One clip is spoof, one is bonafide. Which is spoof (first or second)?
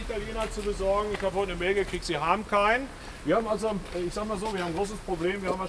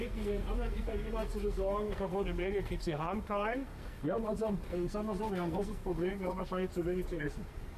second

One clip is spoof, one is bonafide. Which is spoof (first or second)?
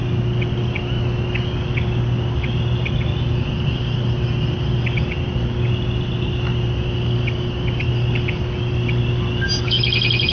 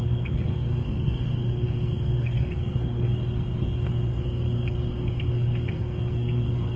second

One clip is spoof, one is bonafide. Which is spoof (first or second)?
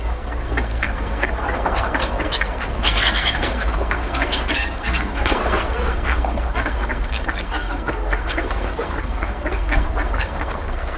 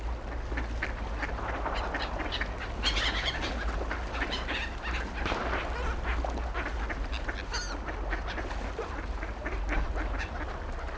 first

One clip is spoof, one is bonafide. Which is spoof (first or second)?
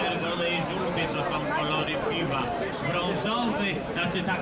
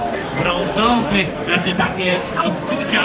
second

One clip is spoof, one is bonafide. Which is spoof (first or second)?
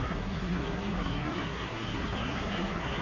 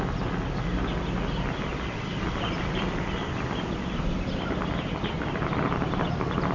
first